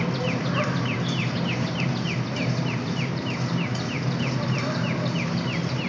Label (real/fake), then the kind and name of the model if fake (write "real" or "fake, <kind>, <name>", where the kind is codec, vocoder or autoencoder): real